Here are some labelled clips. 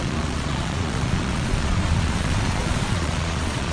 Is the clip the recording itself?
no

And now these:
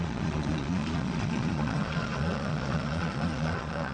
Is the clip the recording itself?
no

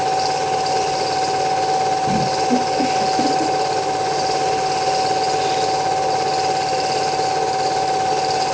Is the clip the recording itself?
yes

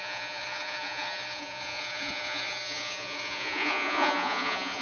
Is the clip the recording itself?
no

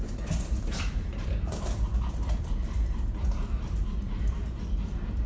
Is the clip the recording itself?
yes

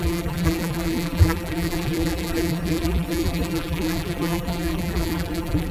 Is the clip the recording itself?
no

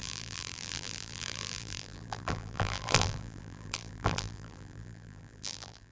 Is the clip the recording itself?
no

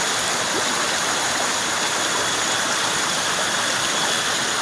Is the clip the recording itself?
yes